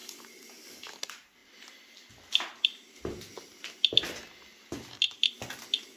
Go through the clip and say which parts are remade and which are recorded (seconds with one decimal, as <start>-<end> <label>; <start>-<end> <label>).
0.0-1.0 remade; 1.0-6.0 recorded